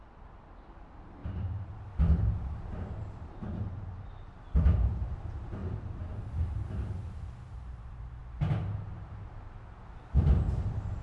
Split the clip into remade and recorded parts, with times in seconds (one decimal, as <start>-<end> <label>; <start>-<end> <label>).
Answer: 0.0-1.2 remade; 1.2-2.5 recorded; 2.5-5.6 remade; 5.6-6.7 recorded; 6.7-11.0 remade